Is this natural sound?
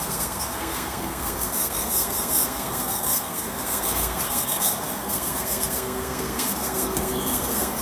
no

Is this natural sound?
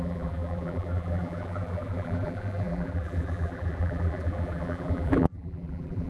no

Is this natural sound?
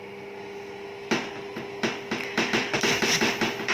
yes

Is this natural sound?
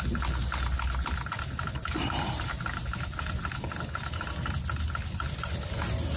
yes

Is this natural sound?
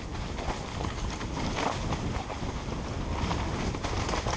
yes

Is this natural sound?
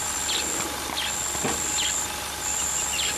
yes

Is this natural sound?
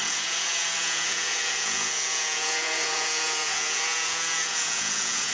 no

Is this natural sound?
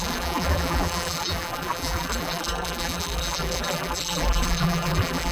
no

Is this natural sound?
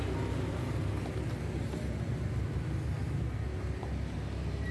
yes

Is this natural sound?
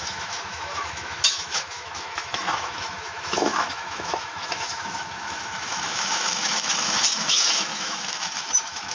no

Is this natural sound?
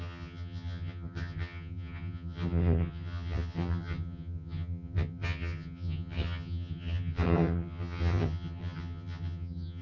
no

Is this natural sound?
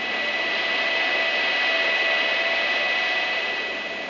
yes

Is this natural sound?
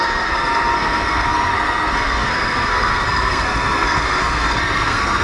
no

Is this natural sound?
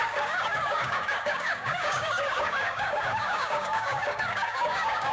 no